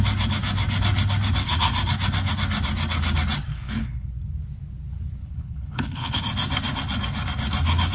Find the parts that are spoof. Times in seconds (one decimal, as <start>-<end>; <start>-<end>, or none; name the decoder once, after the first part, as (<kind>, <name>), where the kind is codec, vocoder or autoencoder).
3.5-4.1 (codec, HILCodec); 5.2-6.2